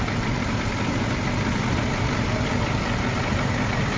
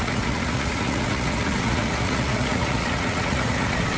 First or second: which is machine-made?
second